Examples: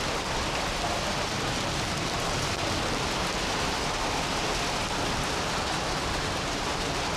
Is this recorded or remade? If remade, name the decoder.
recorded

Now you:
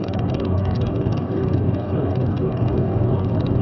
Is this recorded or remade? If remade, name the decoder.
remade, codec, DAC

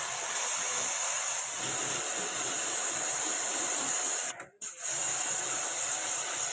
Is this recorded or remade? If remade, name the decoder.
recorded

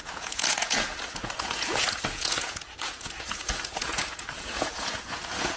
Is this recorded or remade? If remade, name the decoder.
remade, vocoder, Vocos